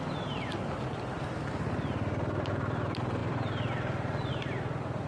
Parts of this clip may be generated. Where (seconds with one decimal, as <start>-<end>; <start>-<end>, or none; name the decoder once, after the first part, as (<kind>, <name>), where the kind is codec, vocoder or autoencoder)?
3.2-4.3 (vocoder, BigVGAN v2)